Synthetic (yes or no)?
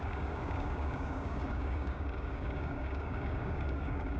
yes